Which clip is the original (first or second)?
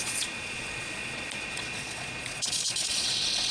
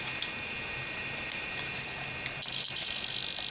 second